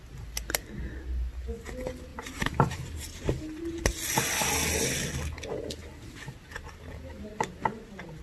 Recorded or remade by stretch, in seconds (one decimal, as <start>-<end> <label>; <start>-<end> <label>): 0.0-2.1 recorded; 2.1-3.2 remade; 3.2-8.2 recorded